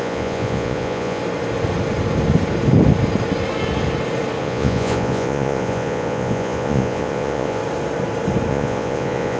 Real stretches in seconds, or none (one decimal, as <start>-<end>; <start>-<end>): 1.2-4.4; 7.6-8.5